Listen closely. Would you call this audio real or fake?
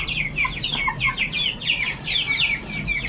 real